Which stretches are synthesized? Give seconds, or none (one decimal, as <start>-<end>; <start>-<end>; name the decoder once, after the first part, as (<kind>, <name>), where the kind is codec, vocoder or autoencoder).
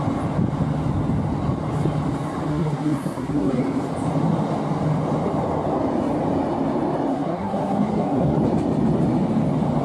2.5-3.6 (codec, SNAC); 7.1-8.4